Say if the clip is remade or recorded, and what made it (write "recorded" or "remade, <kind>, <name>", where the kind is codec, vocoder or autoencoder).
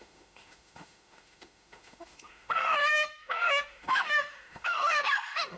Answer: remade, autoencoder, DAC-VAE